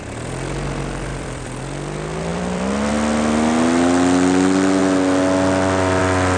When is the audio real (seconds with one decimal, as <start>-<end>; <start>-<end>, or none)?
0.0-1.1; 1.6-2.3; 2.9-6.4